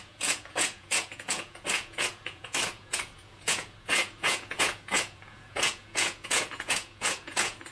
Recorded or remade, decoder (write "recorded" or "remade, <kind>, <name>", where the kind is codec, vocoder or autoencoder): remade, vocoder, Vocos